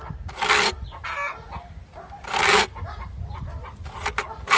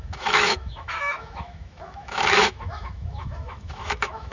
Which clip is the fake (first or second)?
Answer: second